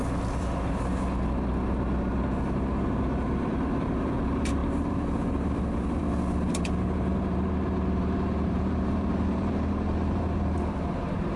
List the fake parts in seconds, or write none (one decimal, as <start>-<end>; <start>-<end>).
3.2-6.0; 6.5-11.4